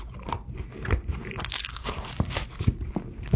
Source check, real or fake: real